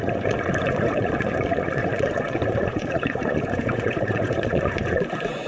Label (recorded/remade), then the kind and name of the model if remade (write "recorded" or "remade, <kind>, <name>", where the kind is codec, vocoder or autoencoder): remade, vocoder, Vocos